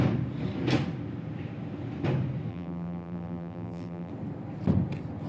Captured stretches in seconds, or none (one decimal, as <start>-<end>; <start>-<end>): 0.0-2.5; 4.1-5.3